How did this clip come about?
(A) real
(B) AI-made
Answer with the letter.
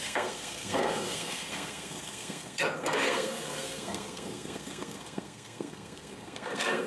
B